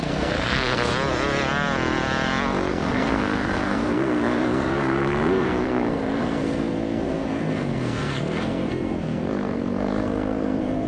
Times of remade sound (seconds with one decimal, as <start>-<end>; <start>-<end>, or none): 0.0-0.9; 2.7-10.9

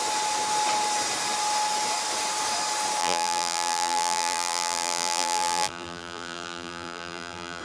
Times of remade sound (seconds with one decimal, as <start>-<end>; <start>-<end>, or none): 3.0-7.6

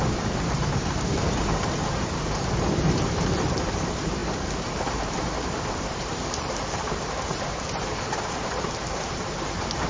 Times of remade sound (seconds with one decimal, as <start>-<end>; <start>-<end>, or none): 0.0-9.9

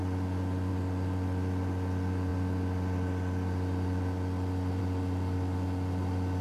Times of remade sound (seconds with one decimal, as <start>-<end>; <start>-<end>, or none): none

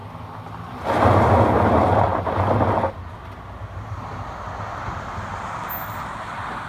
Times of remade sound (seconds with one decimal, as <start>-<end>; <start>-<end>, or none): none

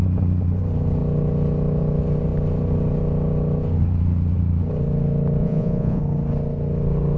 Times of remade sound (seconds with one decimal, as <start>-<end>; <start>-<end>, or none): 5.4-6.0

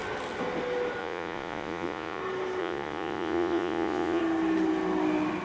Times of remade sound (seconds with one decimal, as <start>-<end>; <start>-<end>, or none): 1.0-2.2; 2.6-4.2

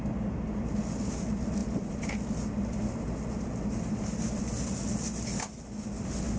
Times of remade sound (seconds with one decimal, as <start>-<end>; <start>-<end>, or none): none